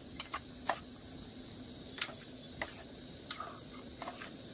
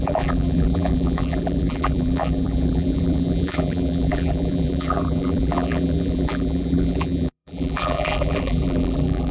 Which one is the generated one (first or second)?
second